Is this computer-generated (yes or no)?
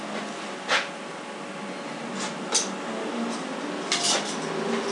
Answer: no